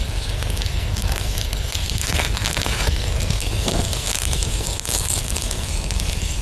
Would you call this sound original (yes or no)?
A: no